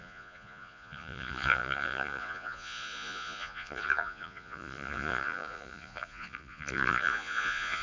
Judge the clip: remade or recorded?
remade